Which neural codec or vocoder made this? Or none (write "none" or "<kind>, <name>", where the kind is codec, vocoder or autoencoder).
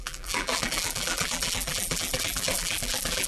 vocoder, BigVGAN v2